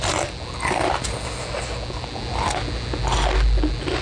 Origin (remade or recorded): recorded